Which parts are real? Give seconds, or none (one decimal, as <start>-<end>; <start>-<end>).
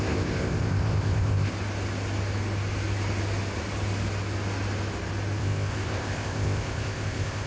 1.5-5.4